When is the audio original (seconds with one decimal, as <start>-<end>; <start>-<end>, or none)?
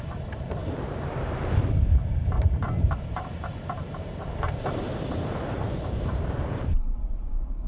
none